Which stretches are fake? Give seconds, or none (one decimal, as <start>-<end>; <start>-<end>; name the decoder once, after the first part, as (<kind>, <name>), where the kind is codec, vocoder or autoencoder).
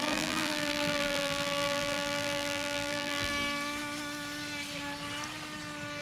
0.0-3.3 (vocoder, BigVGAN v2)